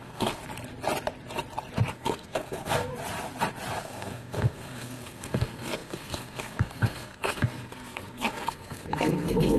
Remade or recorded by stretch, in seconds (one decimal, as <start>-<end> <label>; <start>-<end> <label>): 0.0-0.4 remade; 0.4-1.9 recorded; 1.9-2.9 remade; 2.9-3.8 recorded; 3.8-9.6 remade